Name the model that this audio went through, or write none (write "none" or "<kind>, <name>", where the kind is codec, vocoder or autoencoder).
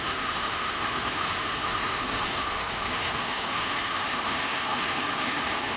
autoencoder, DAC-VAE